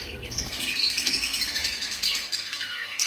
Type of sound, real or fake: fake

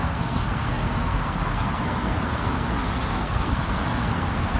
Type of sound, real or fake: fake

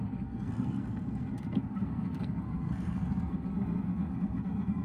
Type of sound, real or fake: fake